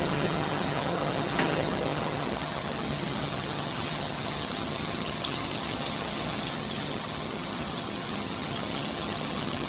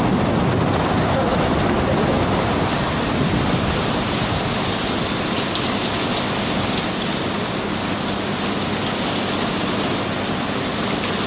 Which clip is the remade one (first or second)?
first